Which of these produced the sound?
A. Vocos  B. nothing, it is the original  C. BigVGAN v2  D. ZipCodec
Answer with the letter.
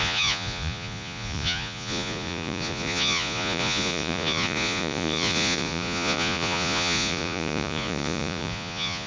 A